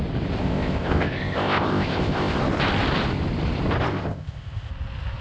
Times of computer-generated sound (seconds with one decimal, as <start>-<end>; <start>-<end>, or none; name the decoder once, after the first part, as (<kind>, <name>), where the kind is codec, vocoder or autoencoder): 0.4-2.4 (codec, ZipCodec); 3.9-4.7